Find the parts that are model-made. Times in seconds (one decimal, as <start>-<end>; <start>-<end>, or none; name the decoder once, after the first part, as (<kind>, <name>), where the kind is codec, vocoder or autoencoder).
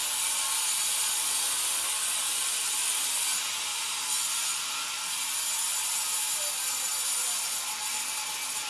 none